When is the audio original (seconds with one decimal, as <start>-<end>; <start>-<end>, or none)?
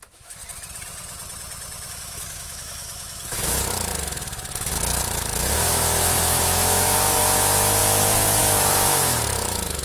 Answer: 0.4-1.9